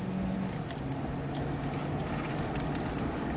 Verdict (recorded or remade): recorded